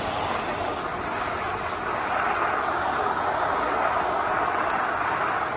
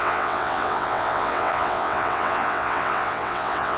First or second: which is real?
first